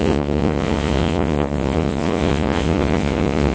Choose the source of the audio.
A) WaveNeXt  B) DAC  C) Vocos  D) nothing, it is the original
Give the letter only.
C